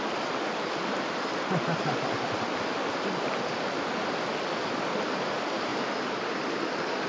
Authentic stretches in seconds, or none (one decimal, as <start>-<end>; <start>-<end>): 0.0-7.1